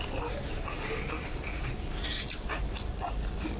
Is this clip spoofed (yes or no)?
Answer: no